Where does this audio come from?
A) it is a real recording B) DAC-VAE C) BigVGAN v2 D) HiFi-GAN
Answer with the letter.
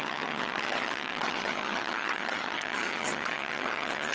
D